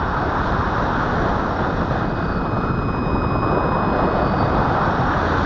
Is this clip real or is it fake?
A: real